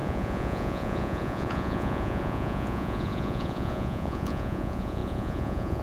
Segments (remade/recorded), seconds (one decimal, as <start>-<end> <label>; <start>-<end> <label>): 0.0-5.8 remade